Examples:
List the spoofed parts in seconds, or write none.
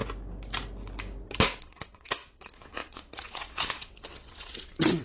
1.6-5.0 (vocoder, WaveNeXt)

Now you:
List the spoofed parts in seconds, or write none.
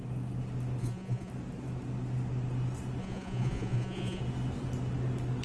0.8-1.3 (vocoder, Vocos); 3.0-4.2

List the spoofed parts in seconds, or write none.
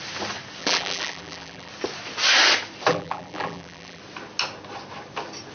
0.6-1.7 (vocoder, BigVGAN v2); 2.9-4.0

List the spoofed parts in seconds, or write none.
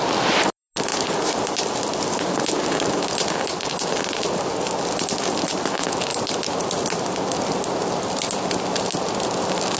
none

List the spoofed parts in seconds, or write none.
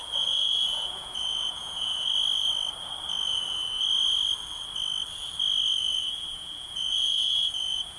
0.0-1.9 (vocoder, Vocos); 6.1-8.0